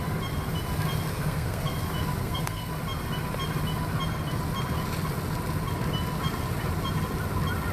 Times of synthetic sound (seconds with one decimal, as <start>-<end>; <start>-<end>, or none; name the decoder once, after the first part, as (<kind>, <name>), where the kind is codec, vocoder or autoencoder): 1.1-1.7 (codec, SNAC); 2.2-2.7